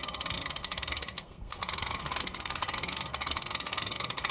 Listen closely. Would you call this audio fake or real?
fake